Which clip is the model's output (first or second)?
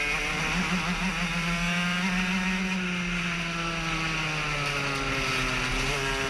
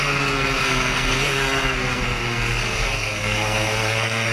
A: second